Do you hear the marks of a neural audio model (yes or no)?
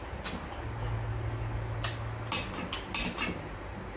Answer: no